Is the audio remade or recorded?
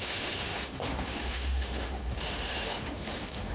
remade